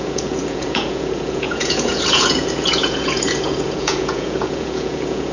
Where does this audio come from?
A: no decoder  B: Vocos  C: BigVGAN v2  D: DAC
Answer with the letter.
B